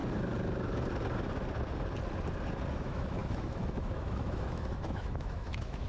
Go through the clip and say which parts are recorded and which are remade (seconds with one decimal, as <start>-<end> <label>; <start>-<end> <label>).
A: 0.0-2.7 recorded; 2.7-5.9 remade